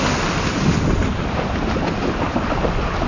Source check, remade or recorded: recorded